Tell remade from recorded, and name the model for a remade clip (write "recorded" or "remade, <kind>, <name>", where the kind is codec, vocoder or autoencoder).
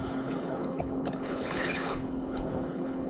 remade, codec, HILCodec